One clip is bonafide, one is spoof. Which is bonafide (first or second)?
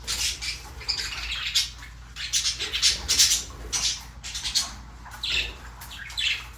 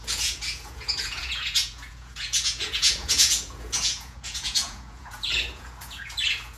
first